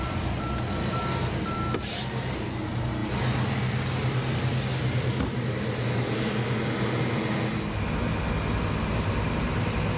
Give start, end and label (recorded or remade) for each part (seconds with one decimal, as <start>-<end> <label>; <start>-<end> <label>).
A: 0.0-10.0 recorded